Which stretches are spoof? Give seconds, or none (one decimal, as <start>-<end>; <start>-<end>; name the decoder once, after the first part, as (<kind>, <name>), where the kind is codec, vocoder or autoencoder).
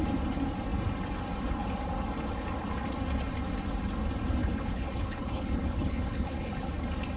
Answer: 4.4-6.7 (codec, HILCodec)